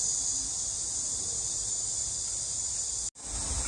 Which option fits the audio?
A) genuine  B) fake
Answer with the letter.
A